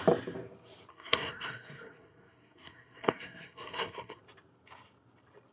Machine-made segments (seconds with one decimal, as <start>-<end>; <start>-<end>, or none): 0.9-4.2